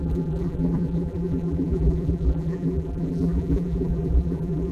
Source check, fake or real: fake